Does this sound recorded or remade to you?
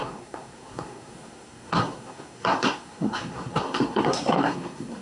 remade